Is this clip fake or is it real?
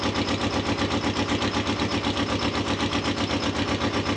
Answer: real